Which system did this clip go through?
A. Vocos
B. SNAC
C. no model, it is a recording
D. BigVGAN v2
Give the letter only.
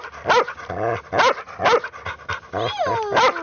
C